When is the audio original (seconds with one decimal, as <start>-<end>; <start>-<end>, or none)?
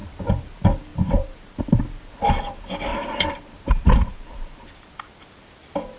0.5-0.9; 1.6-2.9; 5.2-6.0